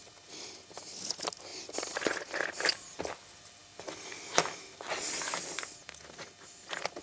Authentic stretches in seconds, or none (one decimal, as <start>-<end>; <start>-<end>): 0.0-7.0